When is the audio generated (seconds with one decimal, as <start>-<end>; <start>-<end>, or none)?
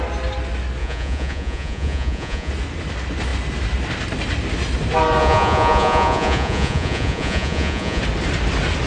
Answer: 0.8-2.5; 5.2-8.0